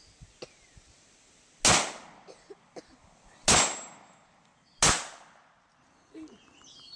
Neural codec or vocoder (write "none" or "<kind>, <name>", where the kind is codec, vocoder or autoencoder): none